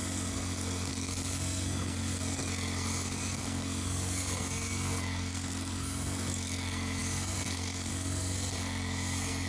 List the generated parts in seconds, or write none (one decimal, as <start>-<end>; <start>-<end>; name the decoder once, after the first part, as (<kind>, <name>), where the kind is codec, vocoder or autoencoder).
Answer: 0.0-9.5 (codec, SNAC)